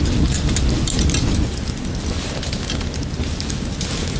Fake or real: real